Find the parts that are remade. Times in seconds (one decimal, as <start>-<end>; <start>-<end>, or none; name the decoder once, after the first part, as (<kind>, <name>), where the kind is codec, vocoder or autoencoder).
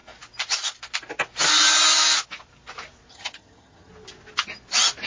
3.1-3.9 (vocoder, HiFi-GAN)